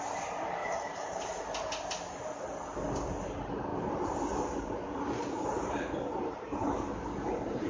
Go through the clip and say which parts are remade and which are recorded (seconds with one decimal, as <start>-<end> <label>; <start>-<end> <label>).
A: 0.0-0.6 recorded; 0.6-1.4 remade; 1.4-3.7 recorded; 3.7-7.7 remade

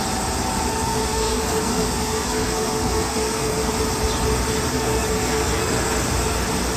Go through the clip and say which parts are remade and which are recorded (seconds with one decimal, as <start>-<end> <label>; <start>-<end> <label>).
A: 0.0-0.7 recorded; 0.7-3.7 remade; 3.7-4.7 recorded; 4.7-5.7 remade; 5.7-6.8 recorded

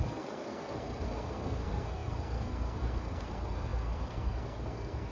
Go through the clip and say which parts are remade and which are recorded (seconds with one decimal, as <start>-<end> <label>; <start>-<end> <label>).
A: 0.0-5.1 remade